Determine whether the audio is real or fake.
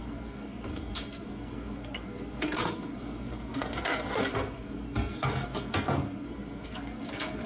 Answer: fake